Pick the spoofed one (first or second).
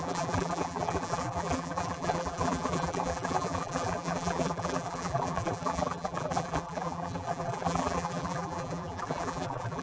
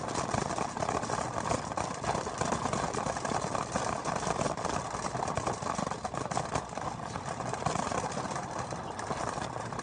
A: first